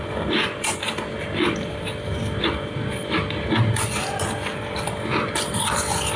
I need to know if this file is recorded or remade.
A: recorded